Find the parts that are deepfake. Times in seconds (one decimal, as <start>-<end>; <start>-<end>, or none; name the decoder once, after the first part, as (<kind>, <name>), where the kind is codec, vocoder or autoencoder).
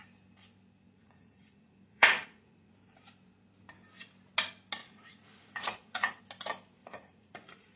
1.0-2.7 (vocoder, Vocos); 4.8-6.2; 6.8-7.8